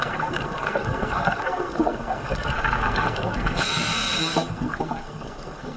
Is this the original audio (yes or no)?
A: no